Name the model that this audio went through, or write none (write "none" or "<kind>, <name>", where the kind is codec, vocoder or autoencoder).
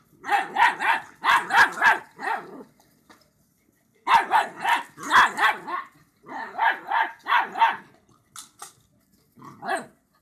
none